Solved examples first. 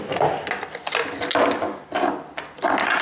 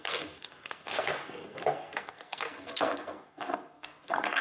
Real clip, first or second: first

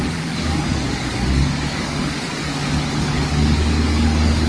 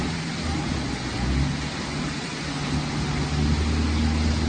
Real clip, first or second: second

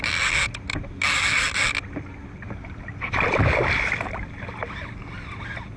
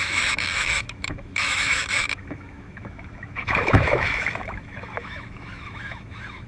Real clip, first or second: first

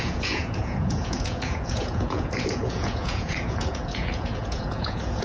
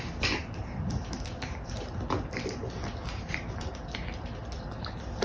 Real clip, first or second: second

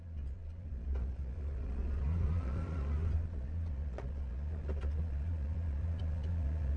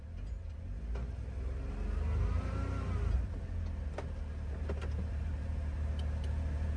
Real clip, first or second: second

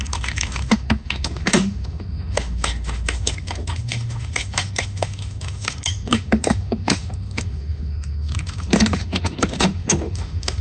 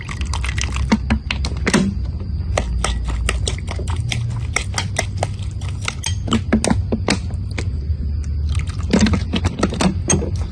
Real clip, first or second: second